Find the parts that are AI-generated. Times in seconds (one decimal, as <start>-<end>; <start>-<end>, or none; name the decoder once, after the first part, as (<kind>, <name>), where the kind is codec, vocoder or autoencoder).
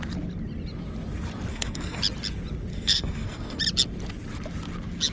1.5-2.0 (codec, SNAC); 2.7-3.6